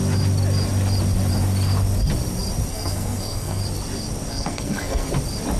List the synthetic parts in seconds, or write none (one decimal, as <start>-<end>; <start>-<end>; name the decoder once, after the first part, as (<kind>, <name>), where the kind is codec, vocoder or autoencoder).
2.7-3.6 (codec, SNAC); 4.3-5.1